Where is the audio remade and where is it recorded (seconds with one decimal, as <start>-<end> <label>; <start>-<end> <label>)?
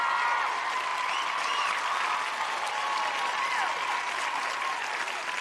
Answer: 0.0-5.4 recorded